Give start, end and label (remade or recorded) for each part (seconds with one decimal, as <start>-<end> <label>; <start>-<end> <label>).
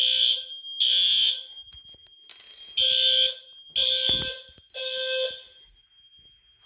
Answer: 0.0-6.7 recorded